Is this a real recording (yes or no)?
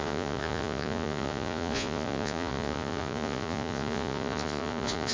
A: no